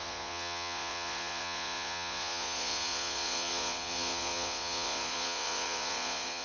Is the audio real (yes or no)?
no